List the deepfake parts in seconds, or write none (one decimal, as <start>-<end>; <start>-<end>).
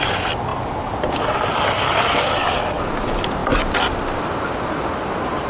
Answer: none